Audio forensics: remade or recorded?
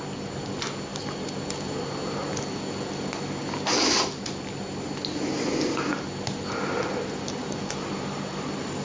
recorded